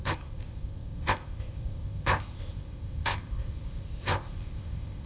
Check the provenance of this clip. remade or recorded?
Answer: remade